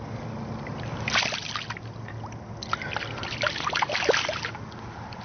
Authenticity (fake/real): real